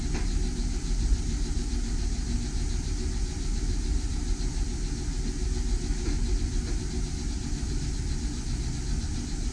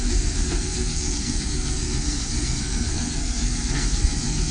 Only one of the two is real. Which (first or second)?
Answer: first